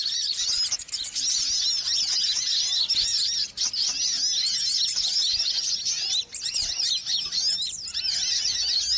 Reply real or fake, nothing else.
real